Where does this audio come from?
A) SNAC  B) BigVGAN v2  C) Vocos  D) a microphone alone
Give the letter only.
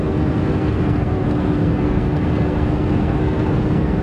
A